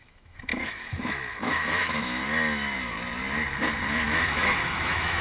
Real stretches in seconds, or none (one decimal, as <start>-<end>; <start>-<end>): 2.2-3.9